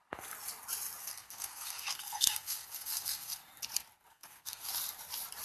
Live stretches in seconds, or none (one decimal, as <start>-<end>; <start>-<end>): 0.0-1.0; 3.4-4.1; 4.7-5.4